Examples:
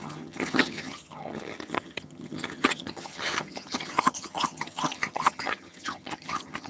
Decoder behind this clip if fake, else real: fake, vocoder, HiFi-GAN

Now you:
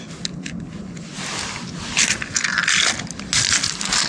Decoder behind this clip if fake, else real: real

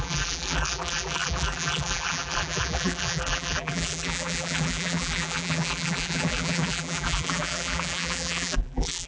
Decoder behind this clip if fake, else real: fake, vocoder, BigVGAN v2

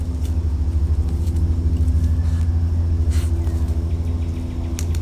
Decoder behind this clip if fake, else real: real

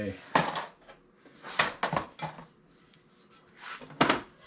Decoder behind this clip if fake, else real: real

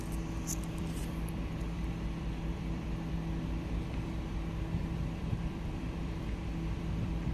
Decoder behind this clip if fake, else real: fake, vocoder, BigVGAN v2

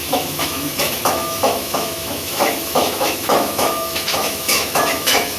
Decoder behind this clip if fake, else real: fake, autoencoder, DAC-VAE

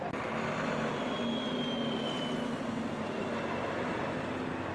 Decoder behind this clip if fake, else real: real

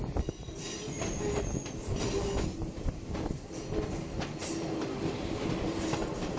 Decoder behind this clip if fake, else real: real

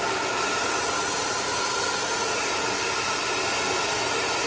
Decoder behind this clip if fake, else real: real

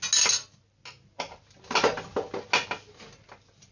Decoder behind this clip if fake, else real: real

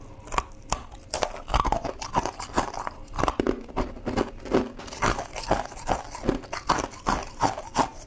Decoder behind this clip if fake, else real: real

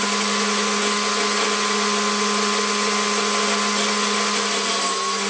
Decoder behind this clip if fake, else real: real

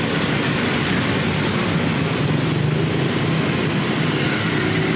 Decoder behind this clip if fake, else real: real